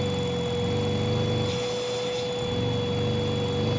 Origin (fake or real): real